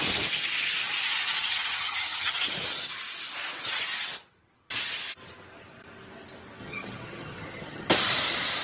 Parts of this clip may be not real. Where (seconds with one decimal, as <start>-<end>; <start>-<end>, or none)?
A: 1.4-2.5; 6.6-7.9